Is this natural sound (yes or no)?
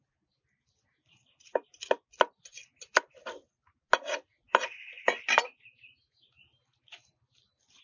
yes